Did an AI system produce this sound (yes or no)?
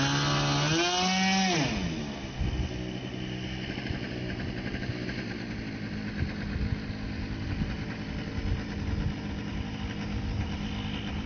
no